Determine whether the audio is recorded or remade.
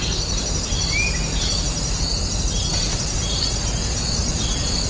recorded